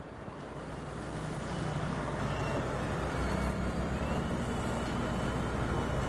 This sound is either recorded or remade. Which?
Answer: recorded